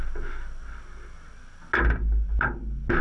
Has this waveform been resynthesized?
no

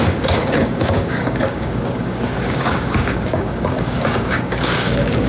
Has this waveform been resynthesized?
yes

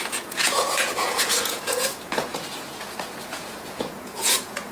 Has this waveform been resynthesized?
yes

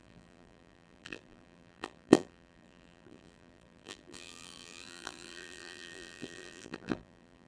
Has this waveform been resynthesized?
yes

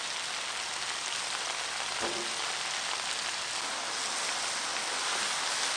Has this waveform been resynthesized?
no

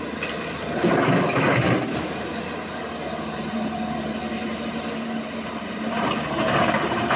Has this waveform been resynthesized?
no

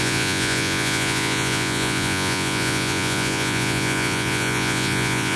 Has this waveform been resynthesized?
yes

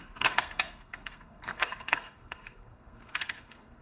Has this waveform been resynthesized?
yes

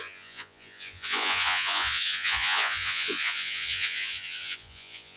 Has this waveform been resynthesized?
yes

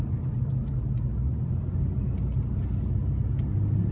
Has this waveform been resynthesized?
no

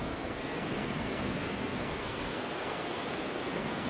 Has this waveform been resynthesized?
yes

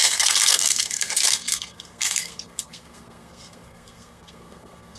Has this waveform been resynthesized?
yes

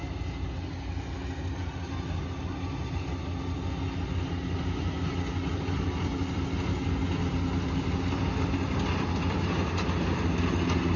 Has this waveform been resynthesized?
no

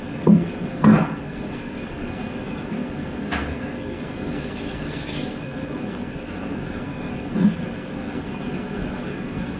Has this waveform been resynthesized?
yes